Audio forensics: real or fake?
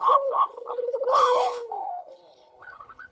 fake